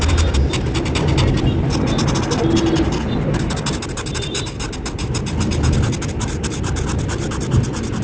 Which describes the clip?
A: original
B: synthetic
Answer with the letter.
A